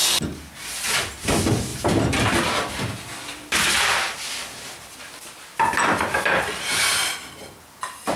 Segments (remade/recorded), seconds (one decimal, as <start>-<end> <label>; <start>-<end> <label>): 0.0-1.7 recorded; 1.7-4.3 remade; 4.3-8.2 recorded